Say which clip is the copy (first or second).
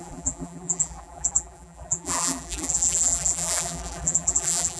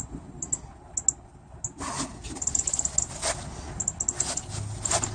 first